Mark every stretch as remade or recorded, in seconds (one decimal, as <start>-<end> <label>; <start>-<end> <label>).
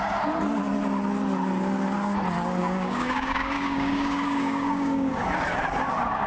0.0-2.6 recorded; 2.6-5.1 remade; 5.1-6.3 recorded